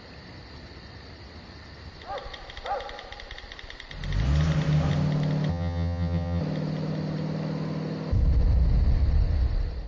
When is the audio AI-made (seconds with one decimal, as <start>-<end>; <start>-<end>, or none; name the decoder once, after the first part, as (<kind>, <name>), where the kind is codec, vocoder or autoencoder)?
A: 5.5-6.4 (vocoder, HiFi-GAN)